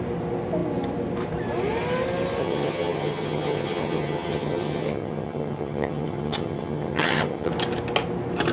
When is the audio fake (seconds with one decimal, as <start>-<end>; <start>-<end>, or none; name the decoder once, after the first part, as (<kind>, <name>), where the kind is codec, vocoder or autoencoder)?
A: 2.4-7.5 (vocoder, HiFi-GAN)